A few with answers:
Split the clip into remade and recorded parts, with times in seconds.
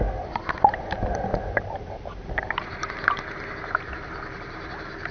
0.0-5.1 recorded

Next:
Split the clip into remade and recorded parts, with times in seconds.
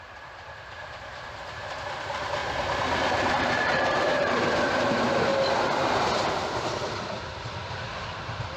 0.0-2.4 remade; 2.4-3.1 recorded; 3.1-5.3 remade; 5.3-8.2 recorded; 8.2-8.6 remade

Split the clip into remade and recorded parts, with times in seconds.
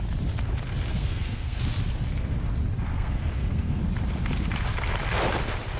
0.0-0.9 recorded; 0.9-1.6 remade; 1.6-2.9 recorded; 2.9-3.8 remade; 3.8-5.8 recorded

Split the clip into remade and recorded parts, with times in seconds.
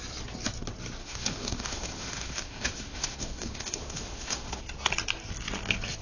0.0-1.0 recorded; 1.0-4.6 remade; 4.6-6.0 recorded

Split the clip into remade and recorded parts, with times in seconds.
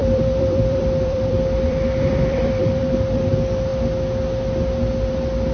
0.0-3.3 remade; 3.3-5.5 recorded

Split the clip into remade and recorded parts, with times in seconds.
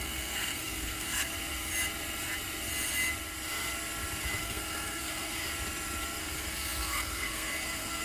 0.0-1.3 remade; 1.3-4.4 recorded; 4.4-5.4 remade; 5.4-6.2 recorded; 6.2-8.0 remade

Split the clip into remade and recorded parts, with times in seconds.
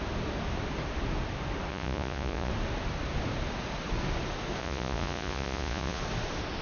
0.0-1.7 recorded; 1.7-2.5 remade; 2.5-4.6 recorded; 4.6-6.0 remade; 6.0-6.6 recorded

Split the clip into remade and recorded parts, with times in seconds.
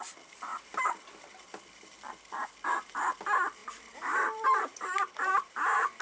0.0-3.6 recorded; 3.6-6.0 remade